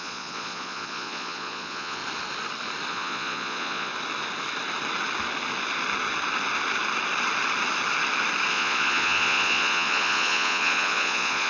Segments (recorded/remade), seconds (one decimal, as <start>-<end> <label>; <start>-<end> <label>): 0.0-2.0 remade; 2.0-2.9 recorded; 2.9-3.9 remade; 3.9-8.5 recorded; 8.5-11.5 remade